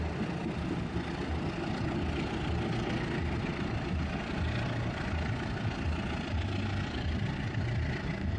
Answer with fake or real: real